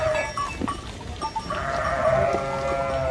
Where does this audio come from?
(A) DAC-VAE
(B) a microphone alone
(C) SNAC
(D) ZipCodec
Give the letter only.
B